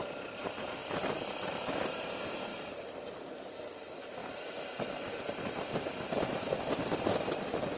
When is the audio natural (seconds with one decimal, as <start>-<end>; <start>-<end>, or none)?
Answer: 0.0-0.8; 1.5-2.5; 3.2-7.8